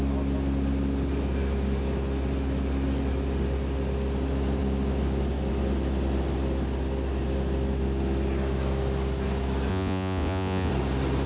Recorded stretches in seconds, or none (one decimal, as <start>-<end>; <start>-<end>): 0.0-9.7; 10.7-11.3